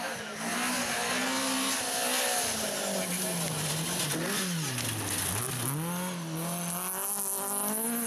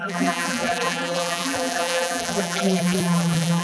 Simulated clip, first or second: second